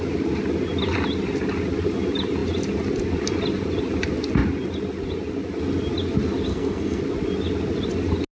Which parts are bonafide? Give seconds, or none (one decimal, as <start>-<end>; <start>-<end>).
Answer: 0.0-6.5; 7.0-8.4